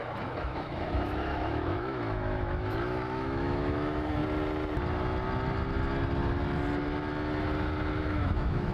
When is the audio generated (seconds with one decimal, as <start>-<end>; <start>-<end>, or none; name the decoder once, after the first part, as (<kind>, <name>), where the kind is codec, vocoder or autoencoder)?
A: 0.0-4.2 (autoencoder, DAC-VAE); 8.0-8.7